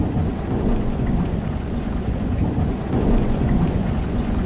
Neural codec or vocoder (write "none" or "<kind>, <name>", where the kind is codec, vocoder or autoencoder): vocoder, Vocos